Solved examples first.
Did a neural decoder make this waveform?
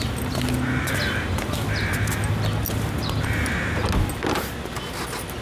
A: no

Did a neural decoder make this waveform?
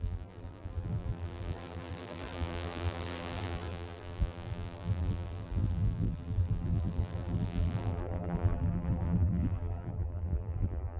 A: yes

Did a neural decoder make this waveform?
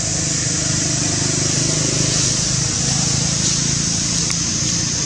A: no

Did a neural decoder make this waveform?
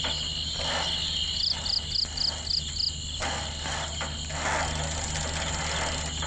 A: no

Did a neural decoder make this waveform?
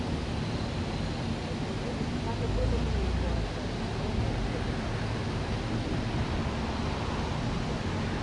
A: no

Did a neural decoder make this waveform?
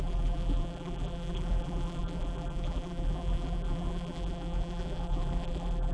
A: yes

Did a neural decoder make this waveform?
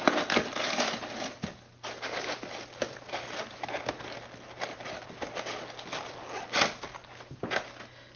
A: no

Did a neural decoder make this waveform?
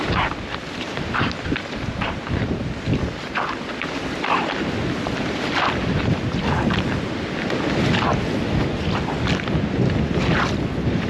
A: no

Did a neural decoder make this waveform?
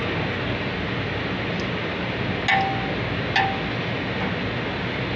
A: no